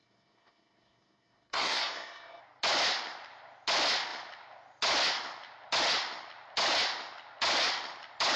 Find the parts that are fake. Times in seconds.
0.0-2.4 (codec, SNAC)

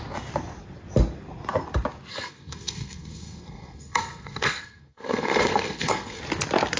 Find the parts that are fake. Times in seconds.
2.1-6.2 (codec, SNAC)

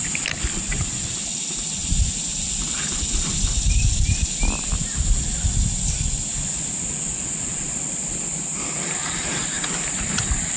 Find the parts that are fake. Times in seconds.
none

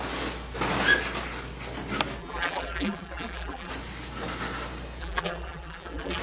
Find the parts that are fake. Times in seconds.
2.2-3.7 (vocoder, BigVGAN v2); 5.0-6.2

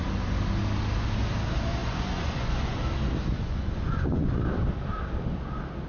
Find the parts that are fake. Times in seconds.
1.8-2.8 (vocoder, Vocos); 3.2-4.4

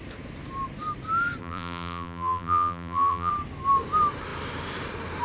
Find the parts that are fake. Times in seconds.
1.4-3.3 (vocoder, BigVGAN v2)